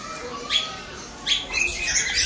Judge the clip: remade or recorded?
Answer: recorded